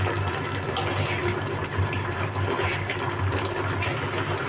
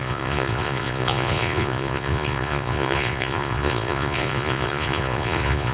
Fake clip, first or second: second